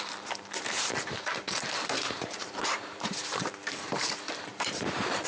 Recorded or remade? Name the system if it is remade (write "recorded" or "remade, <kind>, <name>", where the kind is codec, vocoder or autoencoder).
remade, vocoder, BigVGAN v2